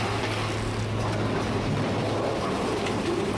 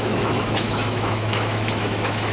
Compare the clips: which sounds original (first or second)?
first